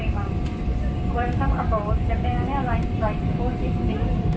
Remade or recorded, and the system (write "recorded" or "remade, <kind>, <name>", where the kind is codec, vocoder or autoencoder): remade, vocoder, BigVGAN v2